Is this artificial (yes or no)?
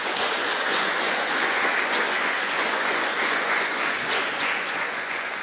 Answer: yes